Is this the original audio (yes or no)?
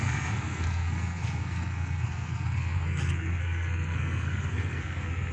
no